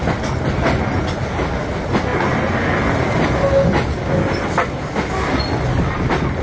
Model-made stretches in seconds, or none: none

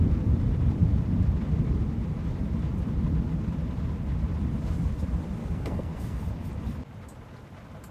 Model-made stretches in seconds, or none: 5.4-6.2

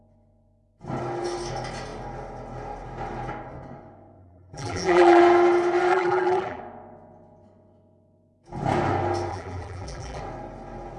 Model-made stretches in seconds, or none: 4.2-5.2; 5.9-6.6; 9.3-10.2